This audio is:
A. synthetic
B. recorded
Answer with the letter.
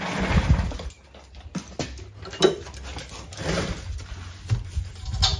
B